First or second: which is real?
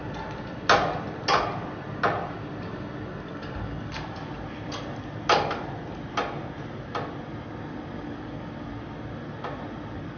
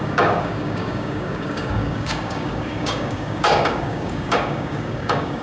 first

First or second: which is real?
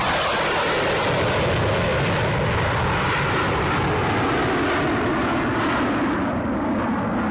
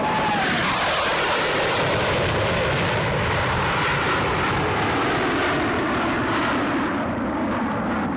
first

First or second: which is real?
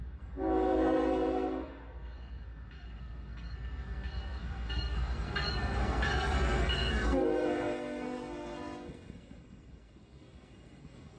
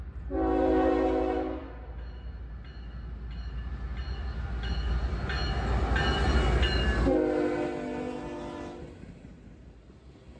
second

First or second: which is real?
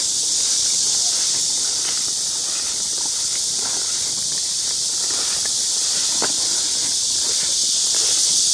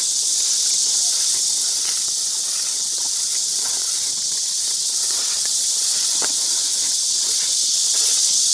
first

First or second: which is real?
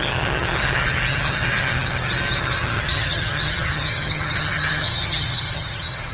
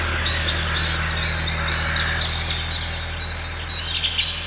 second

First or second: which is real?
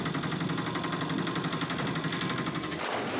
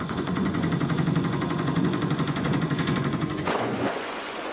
first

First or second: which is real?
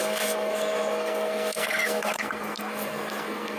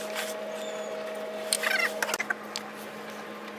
second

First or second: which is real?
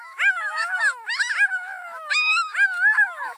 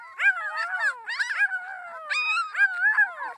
second